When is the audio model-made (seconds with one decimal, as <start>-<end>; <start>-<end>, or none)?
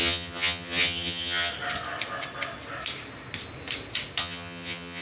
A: 0.0-1.5; 4.2-5.0